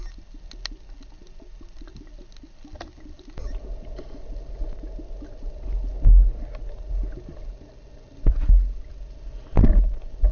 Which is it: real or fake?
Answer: real